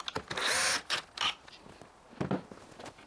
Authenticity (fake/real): real